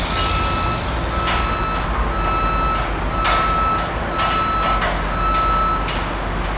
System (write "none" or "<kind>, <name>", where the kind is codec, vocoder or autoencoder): none